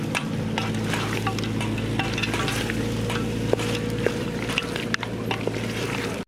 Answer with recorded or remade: recorded